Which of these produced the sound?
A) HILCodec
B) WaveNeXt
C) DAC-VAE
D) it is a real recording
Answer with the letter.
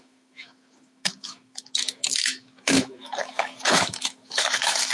C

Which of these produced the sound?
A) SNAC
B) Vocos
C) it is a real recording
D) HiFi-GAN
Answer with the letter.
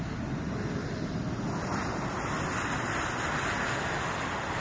C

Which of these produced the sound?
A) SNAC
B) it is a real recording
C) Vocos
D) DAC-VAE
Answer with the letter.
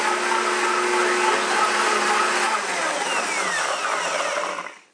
B